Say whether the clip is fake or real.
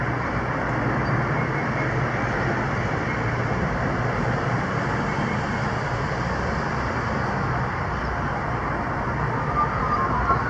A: real